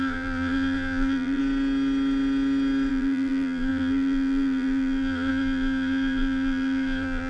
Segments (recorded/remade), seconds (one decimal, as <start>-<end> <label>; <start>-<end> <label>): 0.0-1.4 remade; 1.4-2.9 recorded; 2.9-7.3 remade